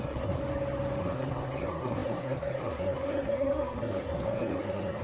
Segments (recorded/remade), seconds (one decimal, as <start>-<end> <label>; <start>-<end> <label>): 0.0-0.4 remade; 0.4-1.0 recorded; 1.0-5.0 remade